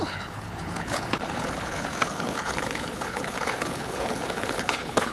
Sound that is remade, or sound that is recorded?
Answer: remade